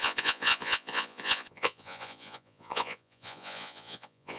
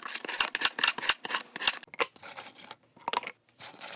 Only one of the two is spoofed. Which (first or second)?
first